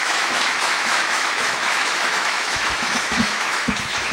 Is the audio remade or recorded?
remade